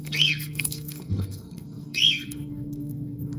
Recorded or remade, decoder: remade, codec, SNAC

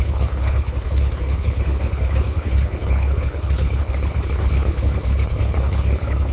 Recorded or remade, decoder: remade, codec, HILCodec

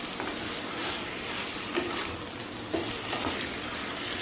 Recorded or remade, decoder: recorded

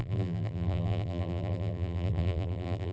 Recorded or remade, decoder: remade, vocoder, BigVGAN v2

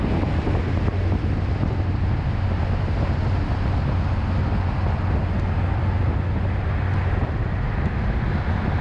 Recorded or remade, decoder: recorded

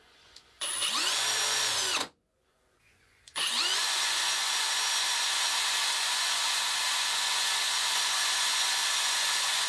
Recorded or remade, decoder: remade, vocoder, Vocos